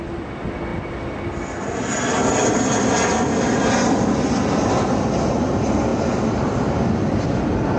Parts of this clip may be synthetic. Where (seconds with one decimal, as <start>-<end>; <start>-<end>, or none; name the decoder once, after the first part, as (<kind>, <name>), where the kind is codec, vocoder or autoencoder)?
none